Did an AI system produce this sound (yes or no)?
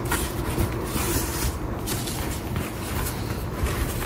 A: no